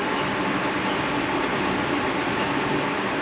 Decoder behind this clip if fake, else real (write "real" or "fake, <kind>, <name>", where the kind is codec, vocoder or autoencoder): real